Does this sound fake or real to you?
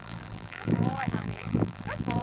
fake